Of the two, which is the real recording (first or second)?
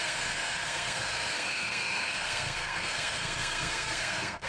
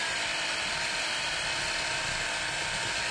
second